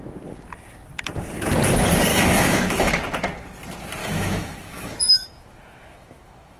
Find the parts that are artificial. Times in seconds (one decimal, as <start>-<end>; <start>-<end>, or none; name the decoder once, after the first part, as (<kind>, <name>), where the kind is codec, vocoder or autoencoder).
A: 2.1-2.9 (autoencoder, DAC-VAE); 4.0-6.6